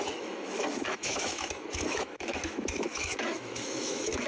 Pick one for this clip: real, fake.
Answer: fake